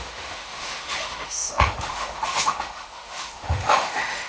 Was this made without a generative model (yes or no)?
no